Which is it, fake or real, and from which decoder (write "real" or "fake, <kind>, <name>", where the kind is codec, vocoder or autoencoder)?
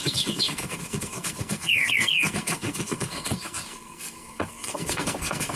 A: fake, codec, SNAC